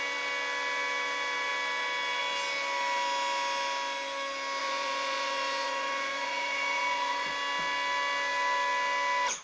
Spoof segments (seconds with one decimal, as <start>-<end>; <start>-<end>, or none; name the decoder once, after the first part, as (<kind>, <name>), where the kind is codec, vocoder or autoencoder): 4.6-7.3 (vocoder, Vocos)